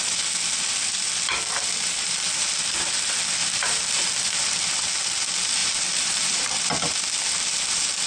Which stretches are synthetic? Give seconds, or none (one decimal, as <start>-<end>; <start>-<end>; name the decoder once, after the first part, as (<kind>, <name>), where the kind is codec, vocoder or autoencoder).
3.4-4.6 (vocoder, BigVGAN v2); 5.6-6.5